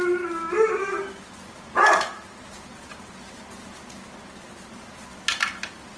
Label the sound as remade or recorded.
recorded